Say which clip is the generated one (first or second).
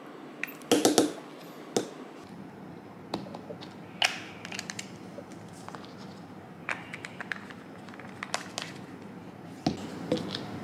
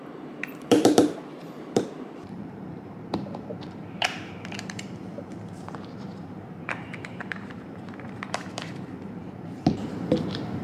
second